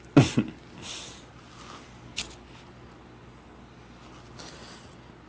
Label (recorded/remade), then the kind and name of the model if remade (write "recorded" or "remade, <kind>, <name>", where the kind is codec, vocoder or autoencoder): recorded